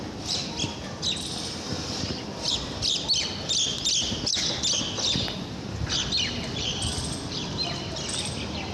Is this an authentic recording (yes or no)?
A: yes